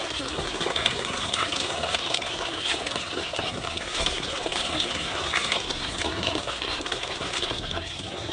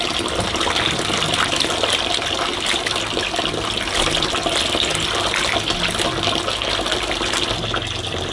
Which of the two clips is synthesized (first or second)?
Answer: first